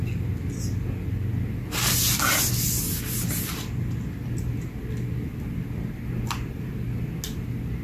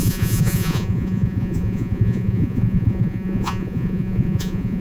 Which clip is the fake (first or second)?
second